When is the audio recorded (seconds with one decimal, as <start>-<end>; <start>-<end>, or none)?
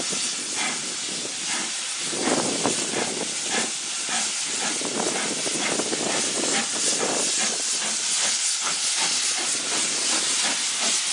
0.0-8.2; 8.8-11.1